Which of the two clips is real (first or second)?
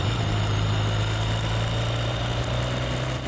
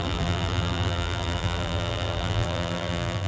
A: first